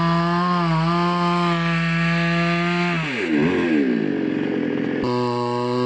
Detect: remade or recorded recorded